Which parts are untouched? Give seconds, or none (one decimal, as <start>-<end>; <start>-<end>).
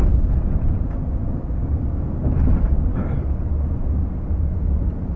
1.2-3.7